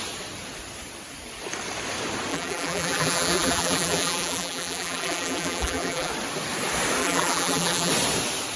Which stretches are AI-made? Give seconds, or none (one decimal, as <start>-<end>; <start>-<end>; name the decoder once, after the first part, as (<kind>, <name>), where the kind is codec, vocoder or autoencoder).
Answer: 2.3-6.1 (vocoder, BigVGAN v2); 7.0-7.9